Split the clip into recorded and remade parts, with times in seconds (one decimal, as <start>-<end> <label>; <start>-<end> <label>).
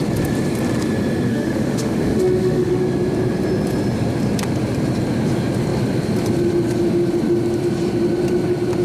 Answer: 0.0-1.3 recorded; 1.3-2.8 remade; 2.8-8.8 recorded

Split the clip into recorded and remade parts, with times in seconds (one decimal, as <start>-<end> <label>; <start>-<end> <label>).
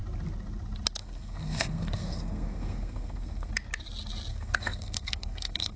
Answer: 0.0-1.0 recorded; 1.0-3.5 remade; 3.5-4.3 recorded; 4.3-5.8 remade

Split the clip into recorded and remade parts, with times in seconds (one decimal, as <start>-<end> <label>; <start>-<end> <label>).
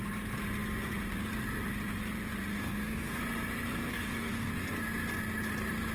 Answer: 0.0-2.5 recorded; 2.5-3.2 remade; 3.2-3.9 recorded; 3.9-4.5 remade; 4.5-5.9 recorded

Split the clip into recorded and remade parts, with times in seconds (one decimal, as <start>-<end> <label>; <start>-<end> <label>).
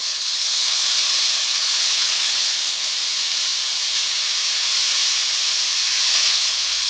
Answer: 0.0-0.9 remade; 0.9-1.4 recorded; 1.4-2.9 remade; 2.9-6.1 recorded; 6.1-6.9 remade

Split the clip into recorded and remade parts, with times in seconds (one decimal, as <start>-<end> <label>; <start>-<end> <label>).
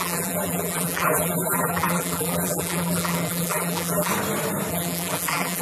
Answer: 0.0-4.1 remade; 4.1-4.7 recorded; 4.7-5.6 remade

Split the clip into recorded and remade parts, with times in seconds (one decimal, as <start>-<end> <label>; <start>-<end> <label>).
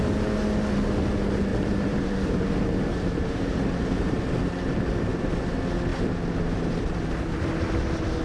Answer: 0.0-1.5 recorded; 1.5-5.3 remade; 5.3-8.2 recorded